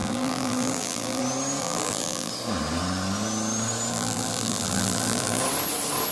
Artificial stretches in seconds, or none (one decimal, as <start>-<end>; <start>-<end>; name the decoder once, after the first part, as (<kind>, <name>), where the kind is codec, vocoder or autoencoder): 0.0-1.2 (vocoder, BigVGAN v2); 1.6-2.3; 3.9-5.4